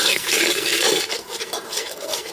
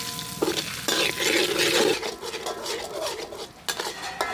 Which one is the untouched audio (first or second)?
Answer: second